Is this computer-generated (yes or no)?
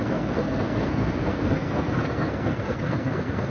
yes